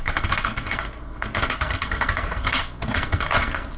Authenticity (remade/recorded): remade